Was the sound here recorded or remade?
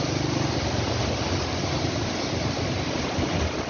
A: recorded